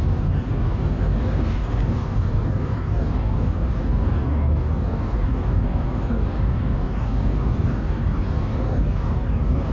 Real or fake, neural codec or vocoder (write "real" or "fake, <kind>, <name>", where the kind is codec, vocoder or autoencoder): fake, codec, DAC